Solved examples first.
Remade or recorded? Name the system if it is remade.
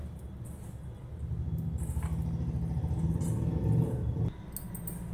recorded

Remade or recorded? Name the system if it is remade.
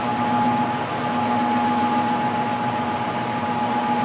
recorded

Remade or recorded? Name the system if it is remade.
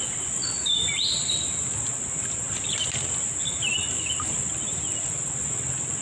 recorded